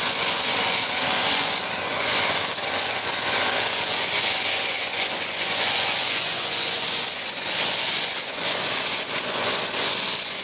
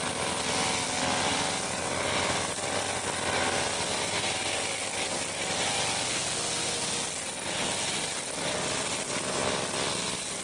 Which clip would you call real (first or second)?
second